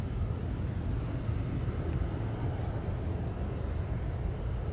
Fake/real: real